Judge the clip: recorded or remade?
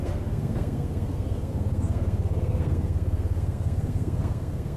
remade